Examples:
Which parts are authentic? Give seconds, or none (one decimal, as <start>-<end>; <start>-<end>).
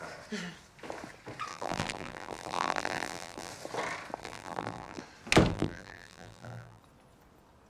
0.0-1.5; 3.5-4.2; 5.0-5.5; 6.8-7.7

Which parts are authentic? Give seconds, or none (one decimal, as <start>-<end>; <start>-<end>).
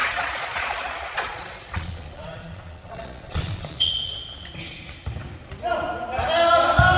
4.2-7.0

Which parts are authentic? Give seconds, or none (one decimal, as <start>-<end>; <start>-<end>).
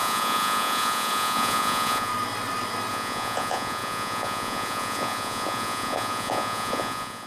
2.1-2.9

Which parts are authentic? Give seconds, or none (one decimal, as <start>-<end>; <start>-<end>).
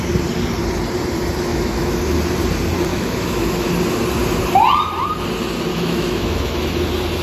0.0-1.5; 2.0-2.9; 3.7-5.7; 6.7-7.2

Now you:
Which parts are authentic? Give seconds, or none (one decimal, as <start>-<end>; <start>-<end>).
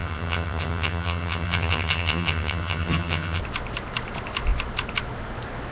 3.4-5.7